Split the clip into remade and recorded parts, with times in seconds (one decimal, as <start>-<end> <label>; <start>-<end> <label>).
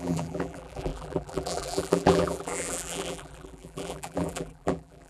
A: 0.0-5.1 remade